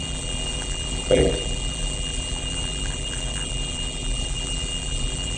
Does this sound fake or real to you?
fake